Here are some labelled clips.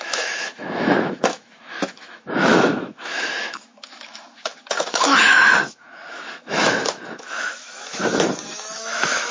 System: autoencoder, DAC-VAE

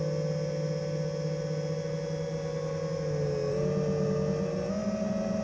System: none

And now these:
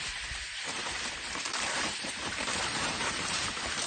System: vocoder, BigVGAN v2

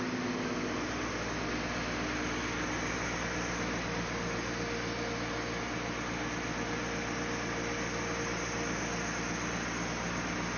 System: none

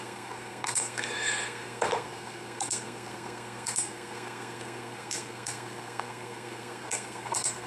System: codec, SNAC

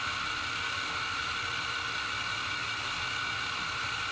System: none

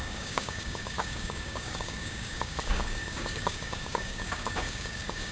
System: codec, DAC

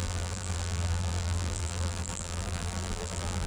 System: vocoder, BigVGAN v2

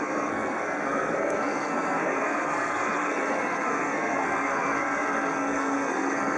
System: codec, SNAC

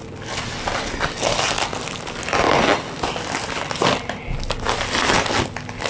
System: none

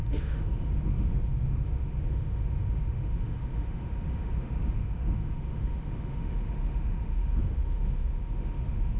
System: autoencoder, DAC-VAE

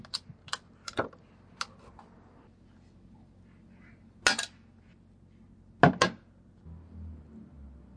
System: none